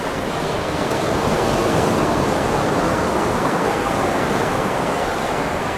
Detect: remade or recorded remade